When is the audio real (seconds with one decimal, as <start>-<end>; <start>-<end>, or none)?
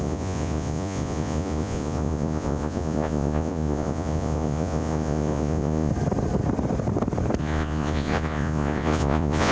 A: 5.9-7.4